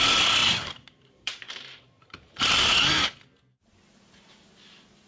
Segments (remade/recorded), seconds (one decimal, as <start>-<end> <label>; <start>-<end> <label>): 0.0-0.4 recorded; 0.4-2.5 remade; 2.5-5.1 recorded